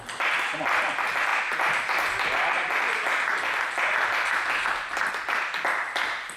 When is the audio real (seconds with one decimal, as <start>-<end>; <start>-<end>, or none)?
0.0-6.4